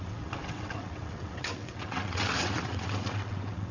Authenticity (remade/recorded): remade